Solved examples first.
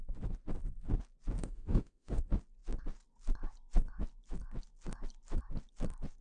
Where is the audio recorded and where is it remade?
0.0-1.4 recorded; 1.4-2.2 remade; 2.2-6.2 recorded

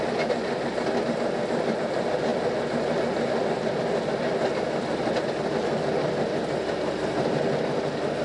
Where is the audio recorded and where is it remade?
0.0-8.2 recorded

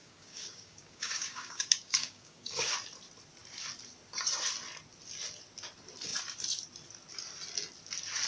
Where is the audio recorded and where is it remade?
0.0-2.7 remade; 2.7-8.3 recorded

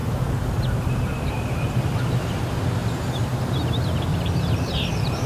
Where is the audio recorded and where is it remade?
0.0-2.1 remade; 2.1-4.1 recorded; 4.1-5.3 remade

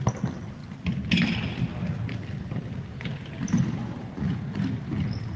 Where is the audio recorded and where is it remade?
0.0-3.8 recorded; 3.8-4.4 remade; 4.4-5.4 recorded